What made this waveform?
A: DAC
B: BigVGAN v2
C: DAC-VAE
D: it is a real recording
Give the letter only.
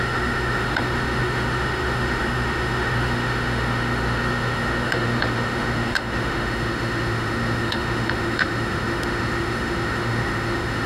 C